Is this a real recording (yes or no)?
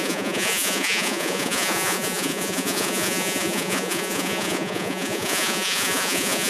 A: no